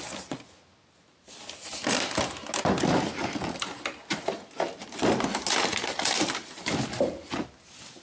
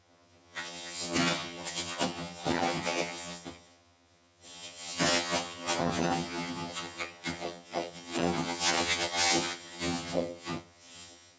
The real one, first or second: first